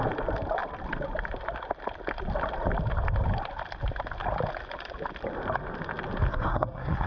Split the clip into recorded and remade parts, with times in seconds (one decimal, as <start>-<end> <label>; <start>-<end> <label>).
0.0-6.3 recorded; 6.3-7.1 remade